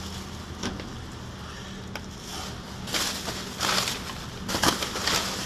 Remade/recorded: recorded